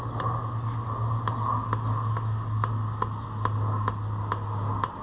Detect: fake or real real